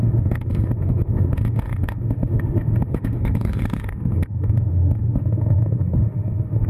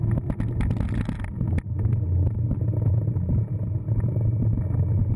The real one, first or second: second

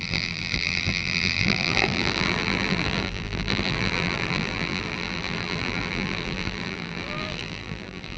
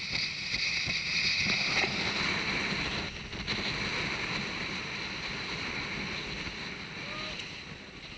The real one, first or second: second